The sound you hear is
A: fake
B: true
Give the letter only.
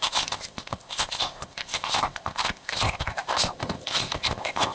A